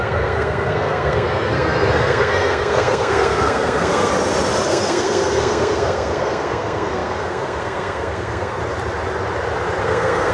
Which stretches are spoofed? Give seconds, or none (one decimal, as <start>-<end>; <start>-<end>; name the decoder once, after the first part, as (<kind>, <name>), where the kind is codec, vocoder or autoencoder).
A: 0.0-4.1 (codec, SNAC); 4.7-8.6; 9.8-10.3